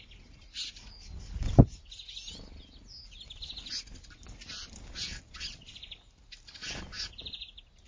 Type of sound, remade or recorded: recorded